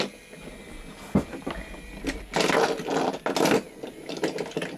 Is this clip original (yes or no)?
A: yes